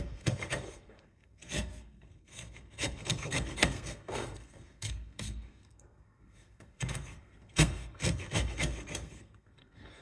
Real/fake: fake